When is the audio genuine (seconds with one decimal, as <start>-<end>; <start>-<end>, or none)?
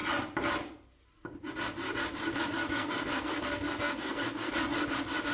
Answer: 0.0-2.3; 4.5-5.3